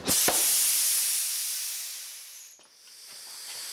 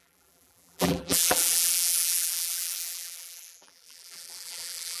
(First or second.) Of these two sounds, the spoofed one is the second